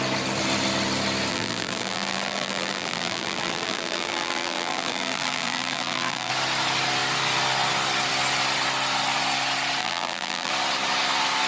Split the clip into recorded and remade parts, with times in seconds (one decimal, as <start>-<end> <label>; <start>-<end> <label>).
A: 0.0-1.3 recorded; 1.3-6.3 remade; 6.3-9.8 recorded; 9.8-10.5 remade; 10.5-11.5 recorded